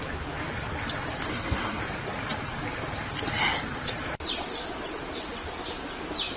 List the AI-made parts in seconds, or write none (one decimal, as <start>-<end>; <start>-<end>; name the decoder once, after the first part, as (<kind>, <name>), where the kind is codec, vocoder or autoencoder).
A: 1.3-1.8 (codec, SNAC)